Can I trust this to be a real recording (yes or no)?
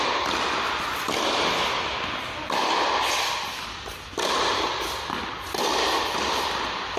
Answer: yes